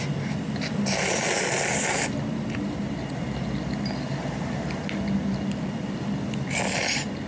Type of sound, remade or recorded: recorded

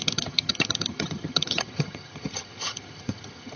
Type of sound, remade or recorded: remade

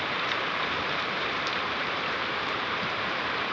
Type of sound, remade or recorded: remade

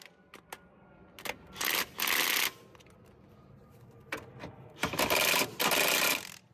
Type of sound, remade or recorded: recorded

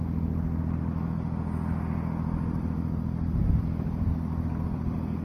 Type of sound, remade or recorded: recorded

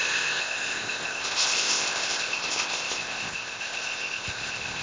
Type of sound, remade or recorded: remade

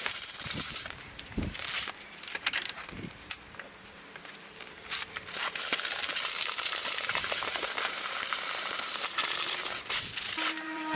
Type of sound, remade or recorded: remade